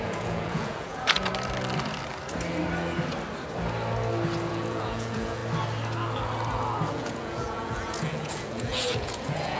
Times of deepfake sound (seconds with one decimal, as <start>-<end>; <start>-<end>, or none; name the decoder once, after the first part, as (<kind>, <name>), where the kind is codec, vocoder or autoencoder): 0.0-1.3 (vocoder, Vocos); 4.5-5.4; 6.9-9.6